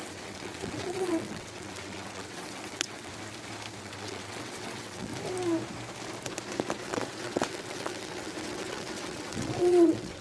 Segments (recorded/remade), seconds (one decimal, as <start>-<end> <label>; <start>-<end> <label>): 0.0-3.1 remade; 3.1-3.8 recorded; 3.8-5.1 remade; 5.1-6.8 recorded; 6.8-10.2 remade